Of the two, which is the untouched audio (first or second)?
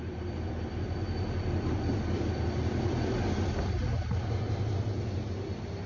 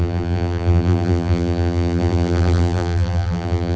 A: first